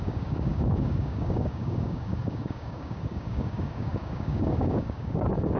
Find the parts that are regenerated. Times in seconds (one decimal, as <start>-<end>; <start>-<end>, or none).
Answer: 0.0-5.6

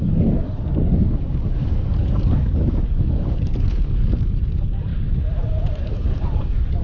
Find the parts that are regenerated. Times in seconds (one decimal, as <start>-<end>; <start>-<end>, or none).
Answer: 0.0-4.9; 5.8-6.8